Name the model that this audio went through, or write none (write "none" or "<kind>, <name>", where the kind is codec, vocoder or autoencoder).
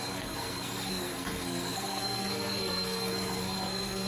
codec, SNAC